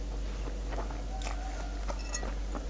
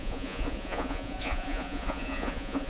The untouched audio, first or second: first